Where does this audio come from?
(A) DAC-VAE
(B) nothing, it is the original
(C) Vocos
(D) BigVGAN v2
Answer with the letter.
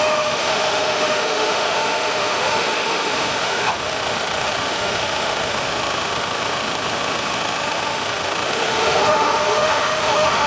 A